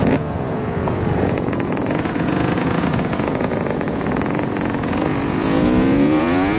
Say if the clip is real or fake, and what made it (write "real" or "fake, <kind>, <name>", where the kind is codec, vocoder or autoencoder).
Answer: fake, vocoder, Vocos